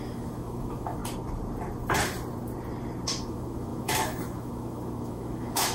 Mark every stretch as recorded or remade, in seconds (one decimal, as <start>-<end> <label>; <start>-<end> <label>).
0.0-1.0 remade; 1.0-3.2 recorded; 3.2-5.7 remade